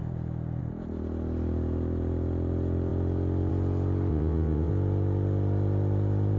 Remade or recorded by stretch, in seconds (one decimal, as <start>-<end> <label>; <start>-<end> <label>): 0.0-4.1 recorded; 4.1-4.7 remade; 4.7-6.4 recorded